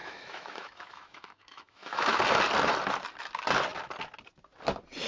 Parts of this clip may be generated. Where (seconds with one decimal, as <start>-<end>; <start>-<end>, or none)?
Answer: 0.0-2.2